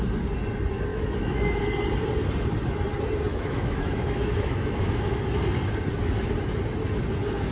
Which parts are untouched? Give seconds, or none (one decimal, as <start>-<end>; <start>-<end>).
0.0-0.9; 1.6-3.3; 5.2-7.5